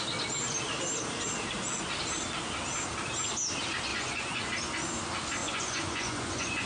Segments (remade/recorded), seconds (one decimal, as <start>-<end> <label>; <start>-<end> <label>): 0.0-3.9 recorded; 3.9-4.5 remade; 4.5-5.4 recorded; 5.4-6.7 remade